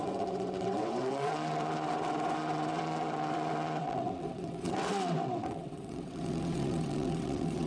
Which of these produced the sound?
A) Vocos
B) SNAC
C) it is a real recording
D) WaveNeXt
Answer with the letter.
D